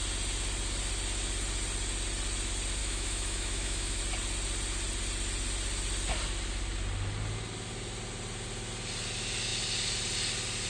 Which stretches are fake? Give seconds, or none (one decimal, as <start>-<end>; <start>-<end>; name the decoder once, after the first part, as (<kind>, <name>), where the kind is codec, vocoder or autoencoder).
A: 2.8-4.0 (autoencoder, DAC-VAE)